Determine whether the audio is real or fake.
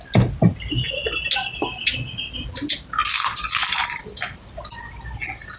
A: real